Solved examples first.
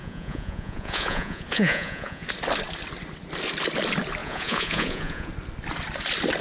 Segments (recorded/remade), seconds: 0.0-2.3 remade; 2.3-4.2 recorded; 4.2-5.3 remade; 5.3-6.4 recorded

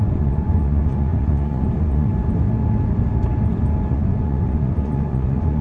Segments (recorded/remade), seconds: 0.0-2.1 remade; 2.1-3.9 recorded; 3.9-5.6 remade

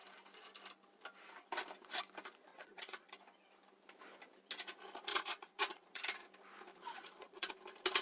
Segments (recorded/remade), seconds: 0.0-2.5 recorded; 2.5-3.1 remade; 3.1-5.1 recorded; 5.1-6.0 remade; 6.0-6.7 recorded; 6.7-7.5 remade; 7.5-8.0 recorded

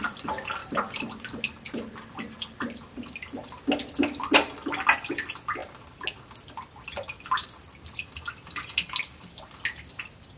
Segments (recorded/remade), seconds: 0.0-10.4 recorded

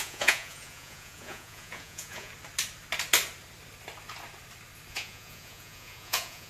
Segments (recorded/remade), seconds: 0.0-2.3 remade; 2.3-4.9 recorded; 4.9-6.5 remade

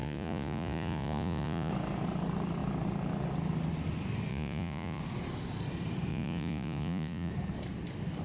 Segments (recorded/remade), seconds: 0.0-1.7 remade; 1.7-4.3 recorded; 4.3-5.0 remade; 5.0-6.1 recorded; 6.1-7.3 remade; 7.3-8.2 recorded

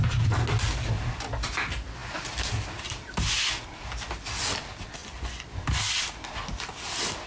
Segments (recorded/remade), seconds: 0.0-5.0 recorded; 5.0-5.6 remade; 5.6-7.3 recorded

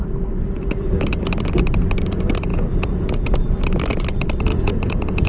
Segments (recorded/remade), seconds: 0.0-2.5 recorded; 2.5-3.3 remade; 3.3-4.5 recorded; 4.5-5.3 remade